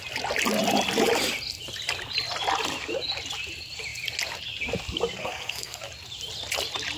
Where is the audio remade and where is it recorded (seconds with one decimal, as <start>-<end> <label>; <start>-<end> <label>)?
0.0-5.2 recorded; 5.2-5.8 remade; 5.8-7.0 recorded